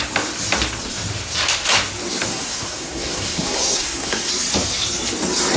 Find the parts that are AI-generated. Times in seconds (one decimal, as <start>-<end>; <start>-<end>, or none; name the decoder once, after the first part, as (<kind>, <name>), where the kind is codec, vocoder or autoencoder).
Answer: 2.3-4.3 (codec, SNAC)